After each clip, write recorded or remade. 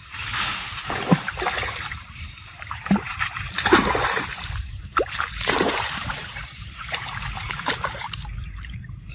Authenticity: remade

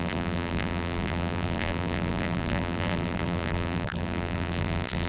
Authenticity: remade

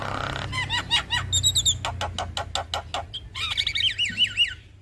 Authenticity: recorded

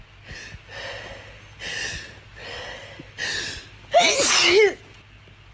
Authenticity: recorded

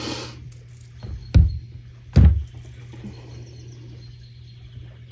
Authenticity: recorded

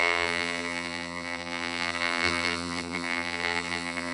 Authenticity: remade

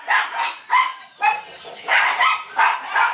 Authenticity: recorded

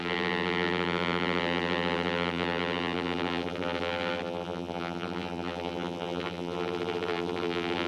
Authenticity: remade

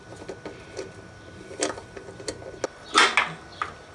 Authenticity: recorded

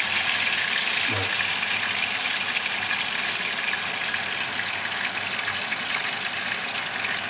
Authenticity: recorded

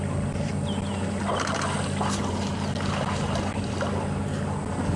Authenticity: recorded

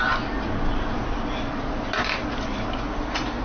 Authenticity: recorded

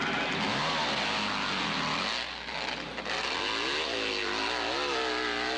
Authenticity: recorded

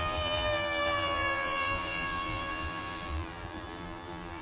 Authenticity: remade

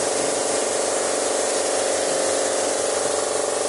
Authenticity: recorded